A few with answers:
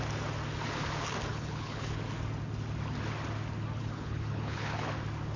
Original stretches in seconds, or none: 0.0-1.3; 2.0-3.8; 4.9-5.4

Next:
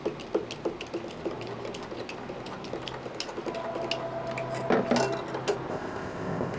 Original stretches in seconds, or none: 0.0-5.7

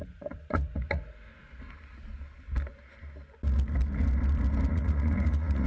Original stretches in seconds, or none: 1.3-4.7

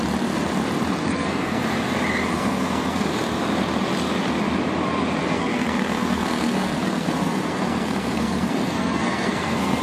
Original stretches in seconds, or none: 0.0-1.0; 1.6-2.3; 3.1-5.2

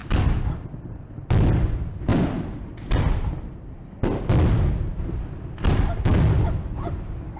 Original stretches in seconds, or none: 0.0-7.4

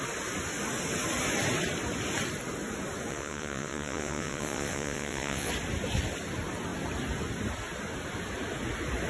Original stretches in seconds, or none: 0.0-3.1; 5.5-9.1

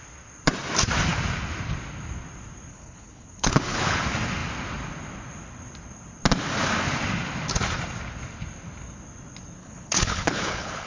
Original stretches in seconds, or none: 0.0-2.7; 4.0-9.6